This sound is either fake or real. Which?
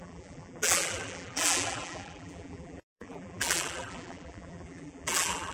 fake